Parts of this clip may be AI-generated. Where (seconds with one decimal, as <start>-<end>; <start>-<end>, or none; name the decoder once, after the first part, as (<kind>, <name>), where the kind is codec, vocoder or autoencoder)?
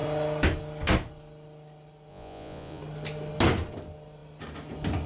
2.1-2.8 (vocoder, Vocos)